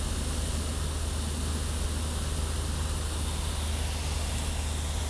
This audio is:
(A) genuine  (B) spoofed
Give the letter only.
A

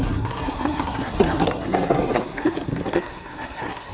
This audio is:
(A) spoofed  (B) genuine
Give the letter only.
A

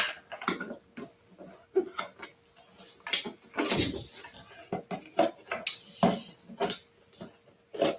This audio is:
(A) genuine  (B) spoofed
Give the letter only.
A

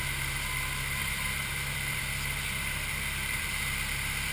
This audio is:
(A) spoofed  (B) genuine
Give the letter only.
A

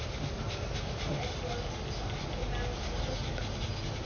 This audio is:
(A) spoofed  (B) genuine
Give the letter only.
B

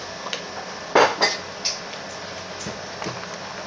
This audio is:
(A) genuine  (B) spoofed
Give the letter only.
A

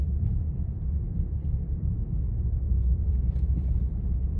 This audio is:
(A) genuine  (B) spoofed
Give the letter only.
B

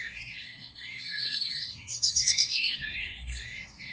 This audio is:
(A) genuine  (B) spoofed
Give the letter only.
B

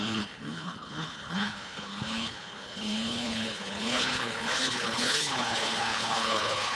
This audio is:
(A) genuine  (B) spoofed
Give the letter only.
B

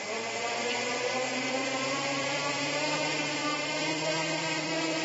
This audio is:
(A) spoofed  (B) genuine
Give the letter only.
A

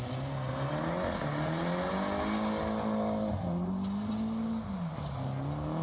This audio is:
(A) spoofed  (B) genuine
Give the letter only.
B